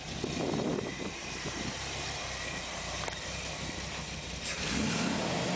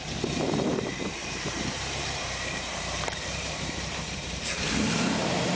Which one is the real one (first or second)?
first